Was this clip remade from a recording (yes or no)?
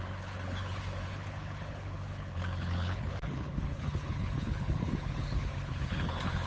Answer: yes